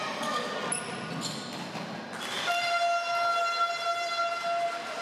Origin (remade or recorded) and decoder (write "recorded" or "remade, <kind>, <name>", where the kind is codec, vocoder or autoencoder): recorded